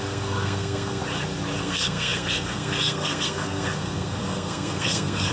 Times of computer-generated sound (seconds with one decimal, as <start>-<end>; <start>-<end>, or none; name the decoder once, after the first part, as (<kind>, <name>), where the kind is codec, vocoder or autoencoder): 0.0-1.0 (codec, SNAC); 1.6-5.3